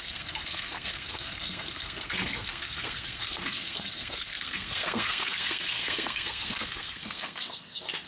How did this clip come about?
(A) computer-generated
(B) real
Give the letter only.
A